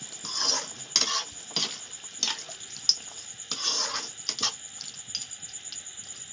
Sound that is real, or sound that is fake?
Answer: real